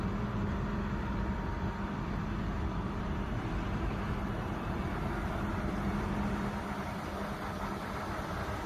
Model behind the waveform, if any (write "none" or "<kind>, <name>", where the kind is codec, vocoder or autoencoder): vocoder, BigVGAN v2